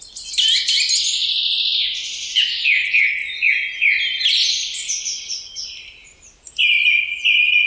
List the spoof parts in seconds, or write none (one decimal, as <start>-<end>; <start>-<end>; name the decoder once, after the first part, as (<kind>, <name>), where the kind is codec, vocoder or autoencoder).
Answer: 3.2-4.2 (vocoder, BigVGAN v2); 6.0-7.0

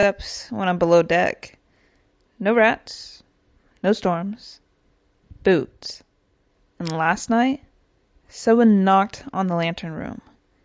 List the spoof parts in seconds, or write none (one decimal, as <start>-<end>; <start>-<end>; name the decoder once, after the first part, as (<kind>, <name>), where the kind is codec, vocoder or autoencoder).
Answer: 0.0-0.5 (autoencoder, DAC-VAE); 8.4-9.1

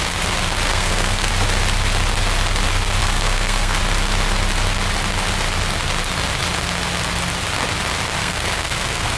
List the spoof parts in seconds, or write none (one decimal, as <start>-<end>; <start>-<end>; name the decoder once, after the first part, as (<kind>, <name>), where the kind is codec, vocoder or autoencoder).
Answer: 0.7-1.3 (codec, SNAC); 3.0-3.8; 8.2-9.2

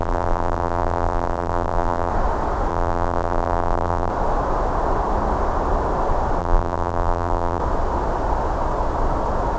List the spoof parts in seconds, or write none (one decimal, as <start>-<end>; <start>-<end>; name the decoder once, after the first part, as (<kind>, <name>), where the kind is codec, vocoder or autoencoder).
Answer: 0.0-2.1 (vocoder, BigVGAN v2); 2.7-4.1; 6.4-7.6

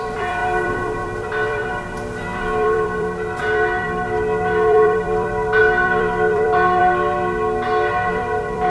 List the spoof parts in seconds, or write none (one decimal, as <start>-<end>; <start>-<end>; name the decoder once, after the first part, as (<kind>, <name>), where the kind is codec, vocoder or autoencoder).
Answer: 0.0-6.8 (vocoder, BigVGAN v2); 8.1-8.7

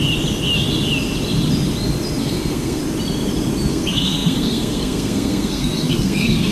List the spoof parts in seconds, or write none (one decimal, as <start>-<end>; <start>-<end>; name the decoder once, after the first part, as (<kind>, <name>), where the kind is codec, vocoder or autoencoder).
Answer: 2.2-2.8 (codec, SNAC); 3.7-6.5

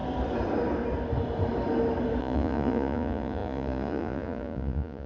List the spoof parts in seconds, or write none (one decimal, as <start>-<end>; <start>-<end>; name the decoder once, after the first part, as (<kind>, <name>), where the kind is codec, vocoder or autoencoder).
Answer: 2.2-5.1 (vocoder, Vocos)

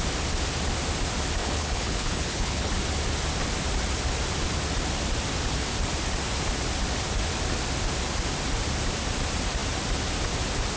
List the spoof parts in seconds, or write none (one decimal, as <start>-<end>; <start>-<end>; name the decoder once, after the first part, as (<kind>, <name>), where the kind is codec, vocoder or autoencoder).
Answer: 1.4-2.7 (codec, HILCodec)